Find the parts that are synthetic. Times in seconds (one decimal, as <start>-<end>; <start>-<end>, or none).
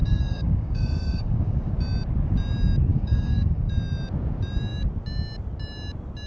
0.0-1.7; 2.9-3.7